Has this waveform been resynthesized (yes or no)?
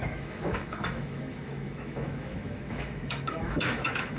yes